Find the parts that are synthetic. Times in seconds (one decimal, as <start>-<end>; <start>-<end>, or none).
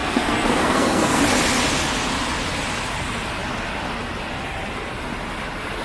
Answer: 0.0-1.2